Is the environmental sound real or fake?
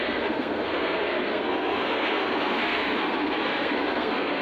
fake